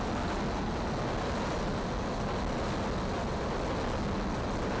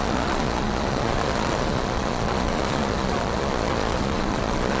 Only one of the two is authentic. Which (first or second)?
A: first